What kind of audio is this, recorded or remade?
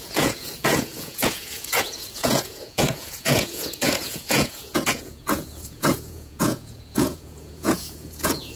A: remade